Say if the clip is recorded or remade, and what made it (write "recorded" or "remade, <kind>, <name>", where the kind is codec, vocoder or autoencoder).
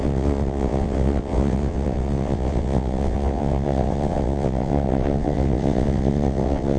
remade, vocoder, WaveNeXt